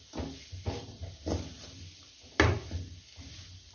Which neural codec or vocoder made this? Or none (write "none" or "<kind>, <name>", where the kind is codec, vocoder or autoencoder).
none